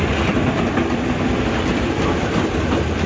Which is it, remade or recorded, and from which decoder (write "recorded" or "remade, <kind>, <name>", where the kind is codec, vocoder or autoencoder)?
recorded